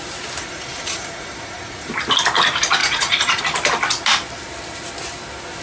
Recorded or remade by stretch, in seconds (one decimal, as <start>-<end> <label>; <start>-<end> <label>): 0.0-0.4 recorded; 0.4-1.9 remade; 1.9-2.8 recorded; 2.8-3.4 remade; 3.4-5.6 recorded